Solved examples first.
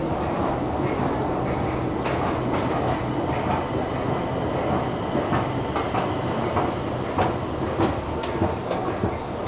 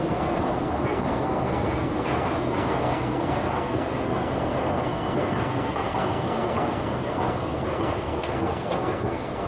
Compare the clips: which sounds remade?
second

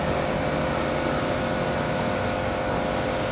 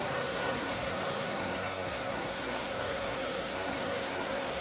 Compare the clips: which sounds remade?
second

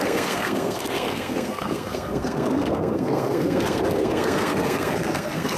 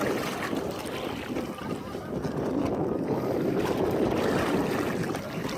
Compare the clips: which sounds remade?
first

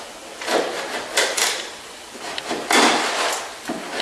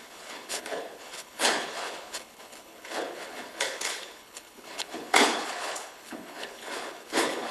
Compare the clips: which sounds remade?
second